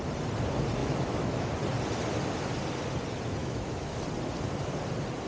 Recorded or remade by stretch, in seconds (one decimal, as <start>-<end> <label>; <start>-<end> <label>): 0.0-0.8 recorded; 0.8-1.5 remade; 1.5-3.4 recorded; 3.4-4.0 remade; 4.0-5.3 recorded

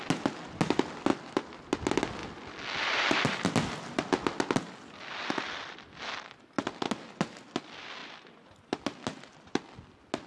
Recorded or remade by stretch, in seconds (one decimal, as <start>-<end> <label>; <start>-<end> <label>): 0.0-10.3 recorded

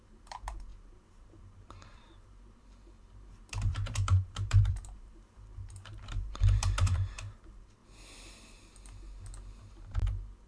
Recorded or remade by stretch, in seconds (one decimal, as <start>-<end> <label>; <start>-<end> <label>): 0.0-7.8 remade; 7.8-9.6 recorded; 9.6-10.5 remade

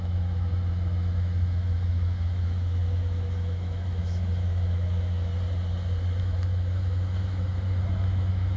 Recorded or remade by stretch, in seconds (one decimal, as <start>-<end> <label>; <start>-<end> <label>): 0.0-5.3 remade; 5.3-6.2 recorded; 6.2-8.6 remade

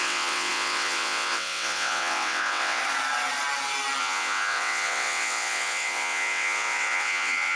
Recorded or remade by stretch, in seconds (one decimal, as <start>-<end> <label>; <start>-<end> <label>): 0.0-2.8 remade; 2.8-4.0 recorded; 4.0-7.6 remade

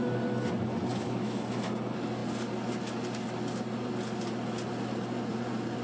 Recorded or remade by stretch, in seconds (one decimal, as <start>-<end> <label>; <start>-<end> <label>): 0.0-0.9 recorded; 0.9-1.7 remade; 1.7-5.8 recorded